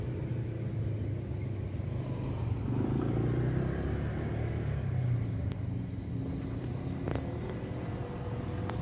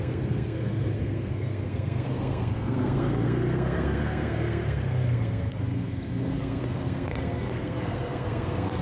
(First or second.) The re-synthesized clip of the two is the second